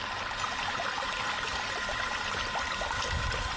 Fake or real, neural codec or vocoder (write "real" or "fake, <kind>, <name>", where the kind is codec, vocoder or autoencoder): real